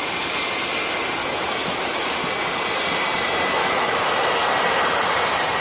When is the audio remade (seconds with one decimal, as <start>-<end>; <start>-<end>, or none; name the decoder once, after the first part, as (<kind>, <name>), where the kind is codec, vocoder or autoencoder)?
1.2-2.1 (autoencoder, DAC-VAE); 3.6-4.1